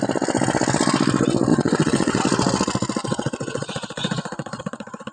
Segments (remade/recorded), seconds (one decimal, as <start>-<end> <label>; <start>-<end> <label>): 0.0-1.5 recorded; 1.5-2.2 remade; 2.2-3.0 recorded; 3.0-5.1 remade